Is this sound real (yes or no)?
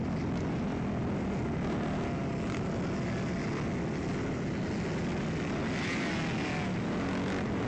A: yes